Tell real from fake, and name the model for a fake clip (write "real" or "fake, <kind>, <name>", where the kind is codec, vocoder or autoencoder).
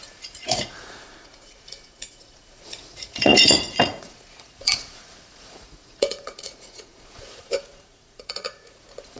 fake, vocoder, Vocos